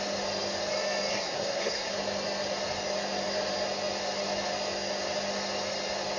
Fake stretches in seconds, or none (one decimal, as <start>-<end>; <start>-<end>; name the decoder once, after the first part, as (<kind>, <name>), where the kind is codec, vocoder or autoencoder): 1.1-1.9 (codec, SNAC)